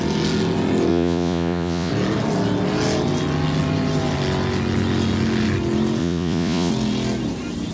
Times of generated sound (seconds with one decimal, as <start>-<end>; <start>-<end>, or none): 0.9-1.9; 6.0-6.7